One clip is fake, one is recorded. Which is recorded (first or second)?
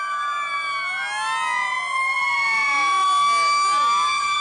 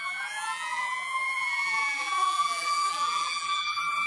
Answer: first